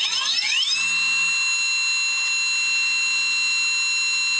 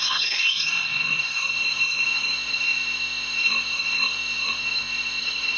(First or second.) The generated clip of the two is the second